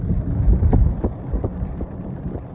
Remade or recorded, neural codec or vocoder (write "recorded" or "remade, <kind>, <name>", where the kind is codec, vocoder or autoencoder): remade, vocoder, BigVGAN v2